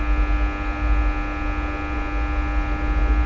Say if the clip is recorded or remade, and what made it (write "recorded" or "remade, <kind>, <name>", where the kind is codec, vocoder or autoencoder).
recorded